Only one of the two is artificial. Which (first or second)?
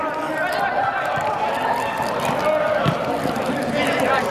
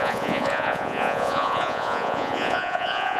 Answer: second